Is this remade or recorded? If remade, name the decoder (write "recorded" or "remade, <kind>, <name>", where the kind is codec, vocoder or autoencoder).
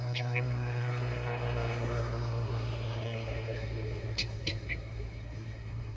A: remade, codec, SNAC